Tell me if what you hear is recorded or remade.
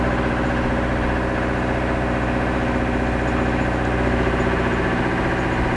recorded